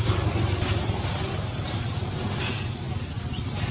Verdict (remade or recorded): recorded